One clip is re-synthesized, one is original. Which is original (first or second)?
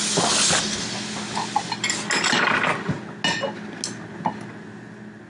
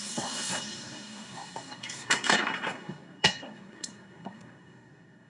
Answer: first